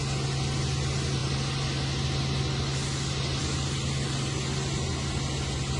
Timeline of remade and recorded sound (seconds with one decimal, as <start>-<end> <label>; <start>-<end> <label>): 0.0-5.8 recorded